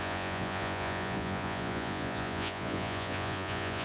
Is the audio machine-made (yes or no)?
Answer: yes